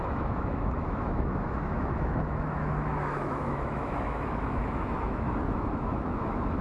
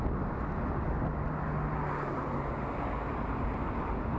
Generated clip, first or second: first